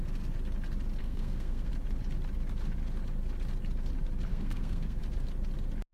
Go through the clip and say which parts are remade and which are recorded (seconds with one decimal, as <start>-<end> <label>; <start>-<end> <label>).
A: 0.0-1.0 recorded; 1.0-1.7 remade; 1.7-4.3 recorded; 4.3-5.0 remade; 5.0-5.9 recorded